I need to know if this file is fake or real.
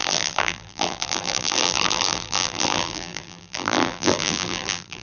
fake